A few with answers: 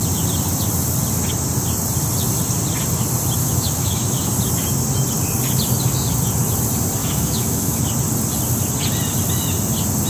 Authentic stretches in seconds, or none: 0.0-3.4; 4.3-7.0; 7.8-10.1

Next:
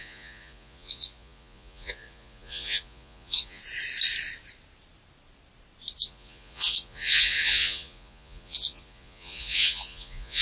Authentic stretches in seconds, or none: 3.6-6.0

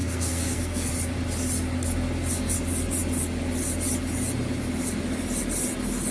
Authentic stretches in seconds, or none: 0.9-6.1

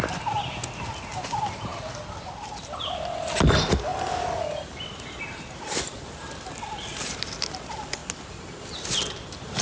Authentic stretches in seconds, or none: 0.0-9.6

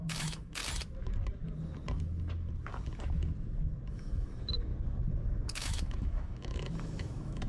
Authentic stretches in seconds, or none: 0.6-3.9; 4.7-5.5